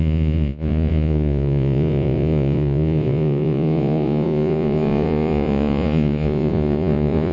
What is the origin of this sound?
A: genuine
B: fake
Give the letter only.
B